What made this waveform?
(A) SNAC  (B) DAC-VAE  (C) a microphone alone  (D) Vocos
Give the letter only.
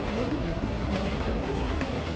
A